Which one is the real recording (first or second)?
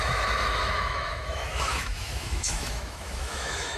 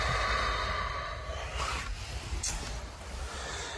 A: second